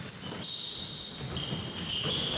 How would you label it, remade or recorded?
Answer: recorded